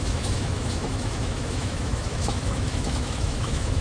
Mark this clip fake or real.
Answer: fake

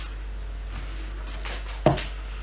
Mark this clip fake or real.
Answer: real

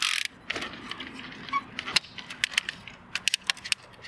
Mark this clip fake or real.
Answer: real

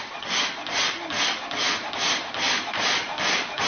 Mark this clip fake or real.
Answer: real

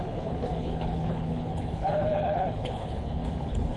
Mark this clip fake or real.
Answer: fake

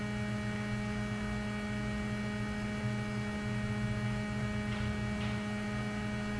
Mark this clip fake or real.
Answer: real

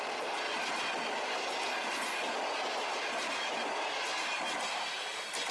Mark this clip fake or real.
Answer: real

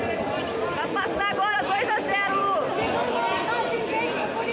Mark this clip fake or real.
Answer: real